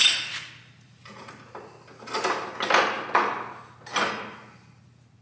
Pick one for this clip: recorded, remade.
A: recorded